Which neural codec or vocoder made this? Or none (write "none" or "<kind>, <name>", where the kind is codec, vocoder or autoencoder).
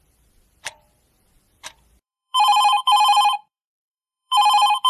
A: vocoder, BigVGAN v2